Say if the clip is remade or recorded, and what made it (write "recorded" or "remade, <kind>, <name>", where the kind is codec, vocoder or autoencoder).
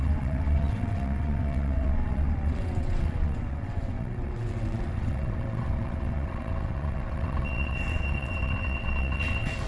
remade, vocoder, WaveNeXt